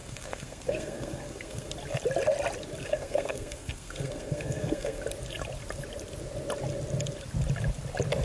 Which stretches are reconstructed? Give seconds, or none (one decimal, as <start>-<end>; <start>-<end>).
0.0-1.7; 2.8-5.0